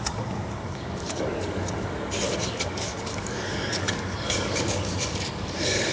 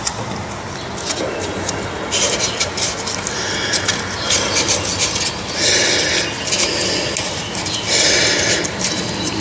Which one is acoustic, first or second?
second